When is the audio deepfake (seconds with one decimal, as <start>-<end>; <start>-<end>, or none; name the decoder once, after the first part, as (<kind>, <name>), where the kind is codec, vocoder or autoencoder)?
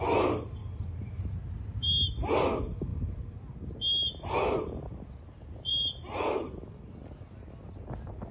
0.6-2.3 (vocoder, BigVGAN v2)